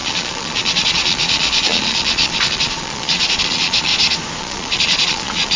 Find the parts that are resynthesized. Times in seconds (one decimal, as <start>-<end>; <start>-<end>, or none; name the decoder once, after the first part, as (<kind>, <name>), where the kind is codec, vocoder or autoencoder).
0.0-3.9 (vocoder, Vocos); 4.4-5.6